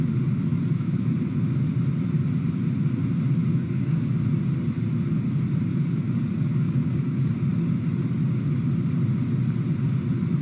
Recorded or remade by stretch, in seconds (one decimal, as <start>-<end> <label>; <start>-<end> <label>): 0.0-0.5 recorded; 0.5-1.2 remade; 1.2-3.4 recorded; 3.4-4.1 remade; 4.1-5.7 recorded; 5.7-7.3 remade; 7.3-10.4 recorded